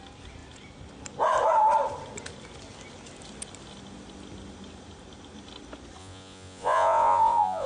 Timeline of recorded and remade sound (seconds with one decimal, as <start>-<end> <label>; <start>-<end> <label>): 0.0-6.0 recorded; 6.0-7.7 remade

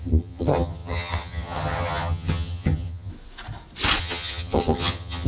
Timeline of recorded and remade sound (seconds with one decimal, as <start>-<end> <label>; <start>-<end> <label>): 0.0-3.1 remade; 3.1-4.0 recorded; 4.0-5.3 remade

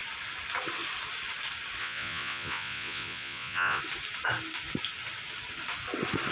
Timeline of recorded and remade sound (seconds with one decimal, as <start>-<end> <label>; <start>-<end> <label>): 0.0-1.8 recorded; 1.8-3.8 remade; 3.8-6.3 recorded

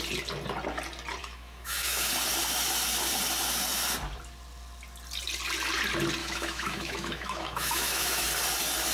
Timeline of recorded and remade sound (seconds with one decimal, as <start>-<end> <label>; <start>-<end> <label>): 0.0-1.2 recorded; 1.2-2.1 remade; 2.1-6.2 recorded; 6.2-8.3 remade; 8.3-8.9 recorded

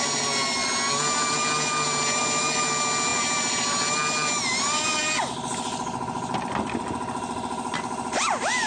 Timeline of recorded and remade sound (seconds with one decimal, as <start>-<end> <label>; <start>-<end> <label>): 0.0-8.7 recorded

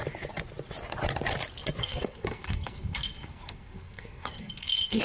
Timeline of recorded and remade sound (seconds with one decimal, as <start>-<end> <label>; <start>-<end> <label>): 0.0-1.8 recorded; 1.8-5.0 remade

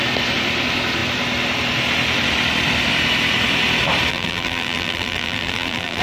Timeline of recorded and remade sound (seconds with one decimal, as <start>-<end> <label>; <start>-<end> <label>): 0.0-4.1 recorded; 4.1-6.0 remade